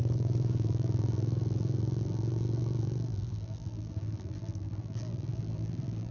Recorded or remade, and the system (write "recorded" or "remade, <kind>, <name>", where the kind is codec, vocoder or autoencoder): remade, vocoder, BigVGAN v2